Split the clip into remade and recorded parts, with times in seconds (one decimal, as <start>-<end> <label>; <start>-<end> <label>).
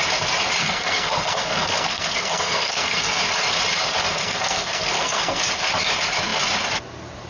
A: 0.0-0.6 recorded; 0.6-3.2 remade; 3.2-4.0 recorded; 4.0-5.4 remade; 5.4-7.3 recorded